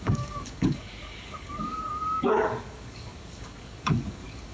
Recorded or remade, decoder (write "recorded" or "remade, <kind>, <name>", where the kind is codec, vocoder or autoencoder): remade, codec, DAC